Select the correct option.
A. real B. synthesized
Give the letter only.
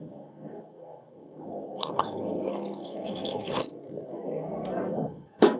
B